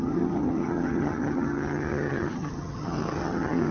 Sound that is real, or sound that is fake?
fake